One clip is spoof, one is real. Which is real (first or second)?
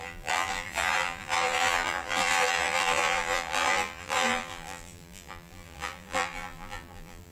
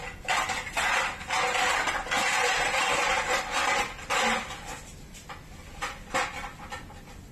second